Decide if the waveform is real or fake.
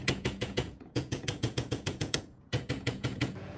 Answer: fake